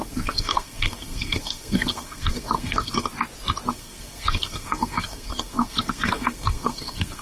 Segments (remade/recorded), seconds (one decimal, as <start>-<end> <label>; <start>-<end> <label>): 0.0-3.1 remade; 3.1-3.7 recorded; 3.7-7.2 remade

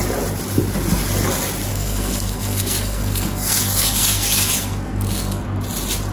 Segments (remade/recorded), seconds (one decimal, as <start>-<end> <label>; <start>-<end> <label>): 0.0-1.7 recorded; 1.7-5.4 remade; 5.4-6.1 recorded

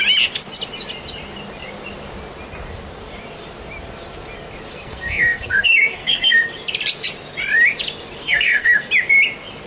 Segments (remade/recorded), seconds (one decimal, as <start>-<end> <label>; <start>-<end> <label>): 0.0-4.7 recorded; 4.7-6.4 remade; 6.4-8.2 recorded; 8.2-8.9 remade; 8.9-9.7 recorded

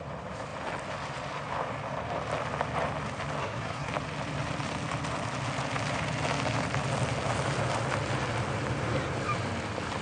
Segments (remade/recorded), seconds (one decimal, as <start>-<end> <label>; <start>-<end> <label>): 0.0-3.4 recorded; 3.4-3.9 remade; 3.9-10.0 recorded

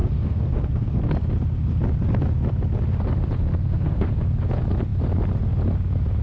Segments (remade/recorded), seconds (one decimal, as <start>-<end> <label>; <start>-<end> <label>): 0.0-1.0 remade; 1.0-3.5 recorded; 3.5-4.1 remade; 4.1-6.2 recorded

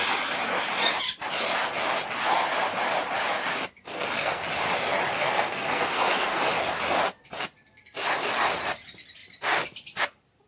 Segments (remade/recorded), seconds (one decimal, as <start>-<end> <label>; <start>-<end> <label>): 0.0-3.8 recorded; 3.8-4.4 remade; 4.4-5.1 recorded; 5.1-6.4 remade; 6.4-10.5 recorded

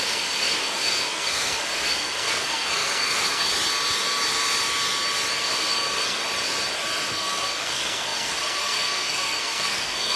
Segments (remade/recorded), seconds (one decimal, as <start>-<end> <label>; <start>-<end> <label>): 0.0-3.5 remade; 3.5-5.4 recorded; 5.4-6.2 remade; 6.2-7.1 recorded; 7.1-10.2 remade

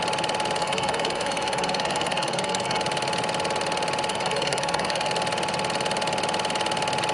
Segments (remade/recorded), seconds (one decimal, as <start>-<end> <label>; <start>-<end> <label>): 0.0-0.6 recorded; 0.6-2.8 remade; 2.8-4.1 recorded; 4.1-5.1 remade; 5.1-7.1 recorded